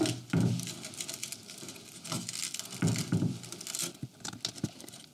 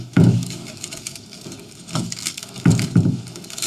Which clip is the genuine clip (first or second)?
first